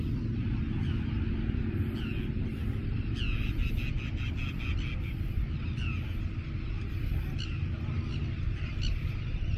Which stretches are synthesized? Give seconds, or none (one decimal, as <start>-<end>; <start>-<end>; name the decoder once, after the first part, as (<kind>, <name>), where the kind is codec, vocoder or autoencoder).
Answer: none